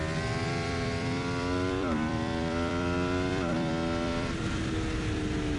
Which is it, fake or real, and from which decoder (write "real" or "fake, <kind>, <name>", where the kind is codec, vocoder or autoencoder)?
fake, vocoder, BigVGAN v2